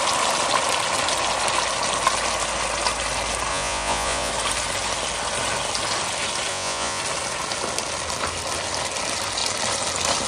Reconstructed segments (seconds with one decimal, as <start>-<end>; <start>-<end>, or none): 3.5-4.3; 6.5-7.0